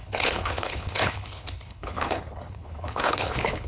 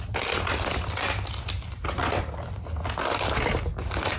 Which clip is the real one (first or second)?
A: second